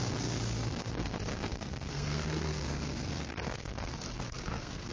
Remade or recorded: remade